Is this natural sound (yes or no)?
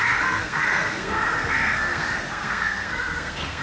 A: no